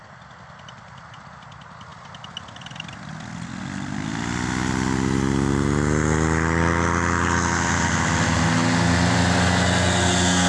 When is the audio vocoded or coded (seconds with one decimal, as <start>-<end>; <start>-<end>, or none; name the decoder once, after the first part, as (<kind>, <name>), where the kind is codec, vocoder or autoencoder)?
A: none